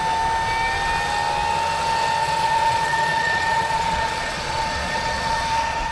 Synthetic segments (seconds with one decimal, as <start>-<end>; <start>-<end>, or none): 2.2-5.9